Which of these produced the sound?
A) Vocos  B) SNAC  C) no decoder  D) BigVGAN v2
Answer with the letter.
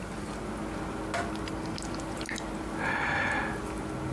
C